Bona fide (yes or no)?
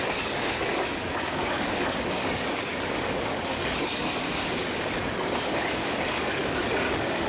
no